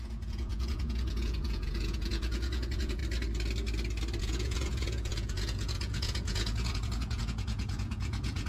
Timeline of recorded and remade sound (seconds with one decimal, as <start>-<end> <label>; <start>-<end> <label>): 0.0-3.0 remade; 3.0-4.2 recorded; 4.2-8.5 remade